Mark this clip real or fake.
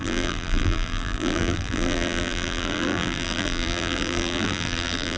fake